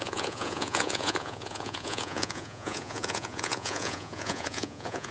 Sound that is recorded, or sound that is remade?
remade